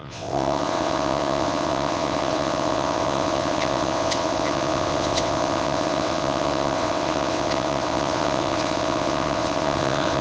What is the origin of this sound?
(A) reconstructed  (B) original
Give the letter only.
A